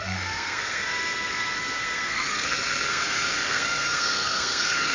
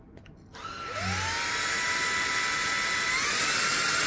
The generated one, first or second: first